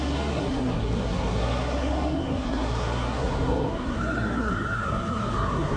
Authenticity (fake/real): fake